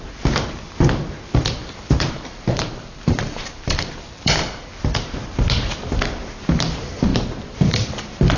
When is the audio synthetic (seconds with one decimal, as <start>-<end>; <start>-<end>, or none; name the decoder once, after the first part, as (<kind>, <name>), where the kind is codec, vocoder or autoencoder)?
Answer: 1.6-4.3 (vocoder, BigVGAN v2); 7.1-8.4